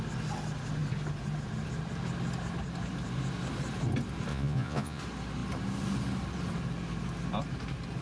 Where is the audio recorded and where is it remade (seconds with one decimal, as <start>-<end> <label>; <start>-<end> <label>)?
0.0-4.3 recorded; 4.3-5.0 remade; 5.0-8.0 recorded